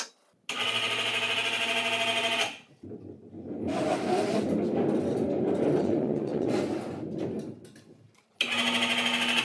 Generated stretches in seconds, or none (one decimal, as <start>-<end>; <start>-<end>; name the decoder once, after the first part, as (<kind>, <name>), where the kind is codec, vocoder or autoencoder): 5.8-6.5 (vocoder, Vocos)

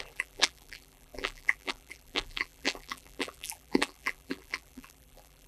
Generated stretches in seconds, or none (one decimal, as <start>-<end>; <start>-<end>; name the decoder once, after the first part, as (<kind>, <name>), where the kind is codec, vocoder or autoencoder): 0.0-5.5 (vocoder, BigVGAN v2)

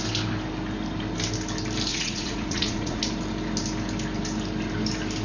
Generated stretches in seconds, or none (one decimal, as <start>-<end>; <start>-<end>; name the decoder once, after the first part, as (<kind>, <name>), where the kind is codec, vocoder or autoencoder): 1.9-3.0 (vocoder, Vocos)

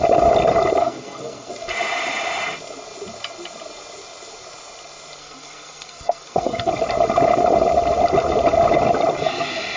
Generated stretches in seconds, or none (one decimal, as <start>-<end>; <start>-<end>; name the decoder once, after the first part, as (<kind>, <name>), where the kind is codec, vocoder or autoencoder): 0.8-1.5 (codec, SNAC); 5.2-6.7

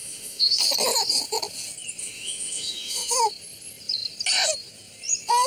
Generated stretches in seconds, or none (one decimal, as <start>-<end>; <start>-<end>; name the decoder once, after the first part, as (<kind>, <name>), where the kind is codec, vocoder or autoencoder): 0.0-0.6 (autoencoder, DAC-VAE); 2.0-3.2